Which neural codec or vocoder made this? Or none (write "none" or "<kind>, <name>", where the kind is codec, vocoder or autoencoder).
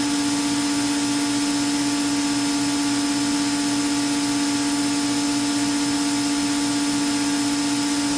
none